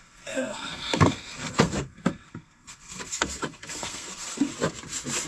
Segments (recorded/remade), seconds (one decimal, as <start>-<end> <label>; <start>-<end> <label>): 0.0-4.5 remade; 4.5-5.3 recorded